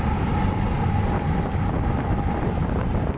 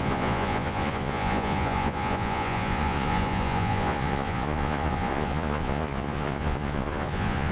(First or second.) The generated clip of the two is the second